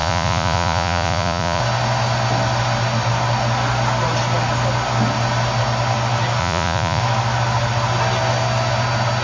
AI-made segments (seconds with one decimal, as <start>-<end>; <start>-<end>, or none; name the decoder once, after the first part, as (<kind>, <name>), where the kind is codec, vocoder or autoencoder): 0.0-1.6 (vocoder, Vocos); 6.4-7.0